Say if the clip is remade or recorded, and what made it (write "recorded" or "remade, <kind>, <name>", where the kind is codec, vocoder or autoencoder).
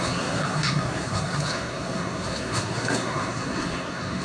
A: remade, codec, SNAC